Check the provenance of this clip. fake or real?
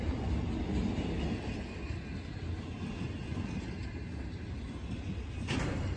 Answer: real